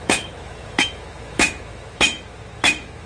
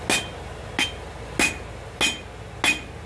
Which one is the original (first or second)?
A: second